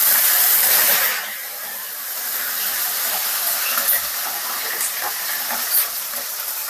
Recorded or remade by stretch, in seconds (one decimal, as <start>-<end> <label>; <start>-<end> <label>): 0.0-6.7 remade